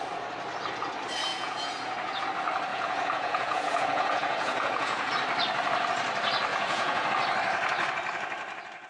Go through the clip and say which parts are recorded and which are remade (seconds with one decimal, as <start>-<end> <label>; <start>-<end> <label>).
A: 0.0-1.3 recorded; 1.3-2.2 remade; 2.2-2.7 recorded; 2.7-5.1 remade; 5.1-6.5 recorded; 6.5-7.1 remade; 7.1-8.9 recorded